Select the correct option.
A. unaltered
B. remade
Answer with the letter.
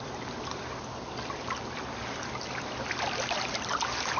A